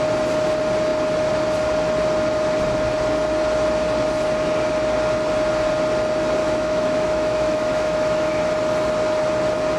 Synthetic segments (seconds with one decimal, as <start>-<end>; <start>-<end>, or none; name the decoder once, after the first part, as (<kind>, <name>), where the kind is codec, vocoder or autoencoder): 6.4-8.4 (autoencoder, DAC-VAE)